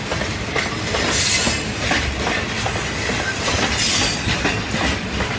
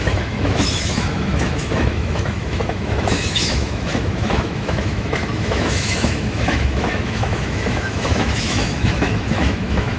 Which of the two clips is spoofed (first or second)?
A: second